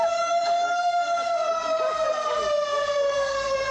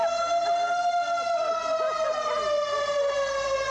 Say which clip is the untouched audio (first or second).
second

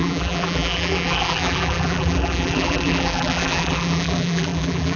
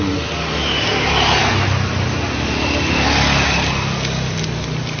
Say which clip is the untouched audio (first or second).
second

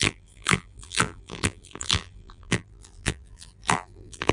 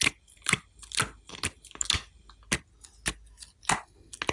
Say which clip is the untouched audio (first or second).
second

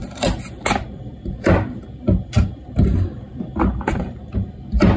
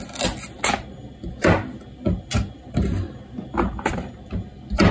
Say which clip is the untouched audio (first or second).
second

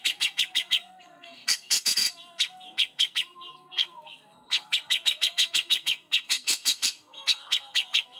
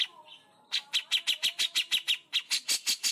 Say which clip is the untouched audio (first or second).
second